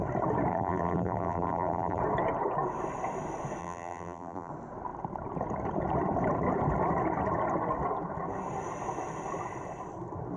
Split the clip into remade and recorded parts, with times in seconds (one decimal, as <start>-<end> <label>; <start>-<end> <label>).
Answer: 0.0-0.5 recorded; 0.5-2.0 remade; 2.0-3.6 recorded; 3.6-4.5 remade; 4.5-10.4 recorded